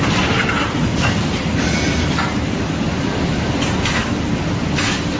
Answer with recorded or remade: recorded